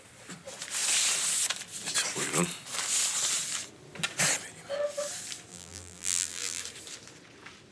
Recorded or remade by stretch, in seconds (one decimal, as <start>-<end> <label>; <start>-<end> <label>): 0.0-5.5 recorded; 5.5-6.6 remade; 6.6-7.7 recorded